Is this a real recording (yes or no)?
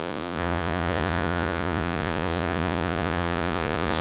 no